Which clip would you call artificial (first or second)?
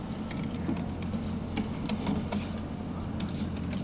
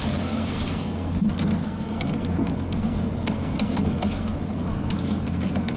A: second